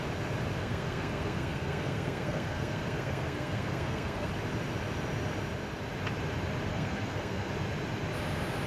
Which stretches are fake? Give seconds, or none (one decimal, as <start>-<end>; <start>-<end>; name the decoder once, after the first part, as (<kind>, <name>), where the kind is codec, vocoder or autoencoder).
0.6-4.3 (codec, SNAC); 6.7-7.5